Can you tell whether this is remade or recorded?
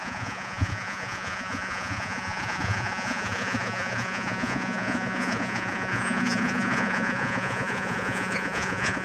remade